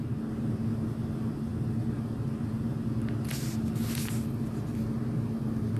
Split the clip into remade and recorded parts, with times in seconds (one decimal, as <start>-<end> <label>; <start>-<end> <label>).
0.0-5.8 recorded